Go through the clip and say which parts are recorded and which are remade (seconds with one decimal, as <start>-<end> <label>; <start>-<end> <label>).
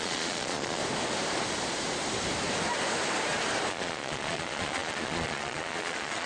0.0-0.8 remade; 0.8-3.7 recorded; 3.7-6.3 remade